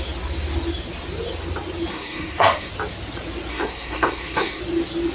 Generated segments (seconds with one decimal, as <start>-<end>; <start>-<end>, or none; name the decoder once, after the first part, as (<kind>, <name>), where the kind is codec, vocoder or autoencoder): 1.9-2.7 (codec, SNAC); 3.5-4.6